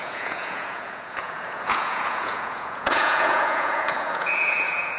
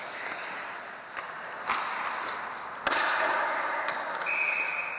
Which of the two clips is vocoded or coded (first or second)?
first